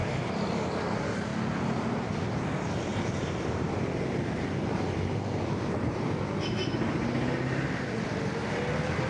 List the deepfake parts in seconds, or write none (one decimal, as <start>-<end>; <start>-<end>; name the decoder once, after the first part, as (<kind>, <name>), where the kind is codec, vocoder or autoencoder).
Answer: 2.9-6.2 (vocoder, BigVGAN v2)